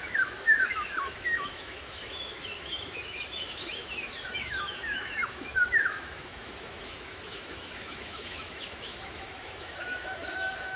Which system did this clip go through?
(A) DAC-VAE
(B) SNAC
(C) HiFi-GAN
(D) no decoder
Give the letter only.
A